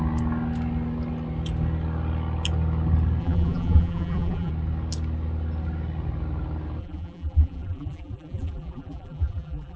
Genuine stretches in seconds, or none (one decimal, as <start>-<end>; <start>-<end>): 0.0-3.2; 4.5-6.8